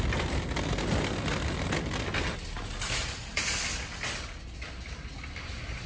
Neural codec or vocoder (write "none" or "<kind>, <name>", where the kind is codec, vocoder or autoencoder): none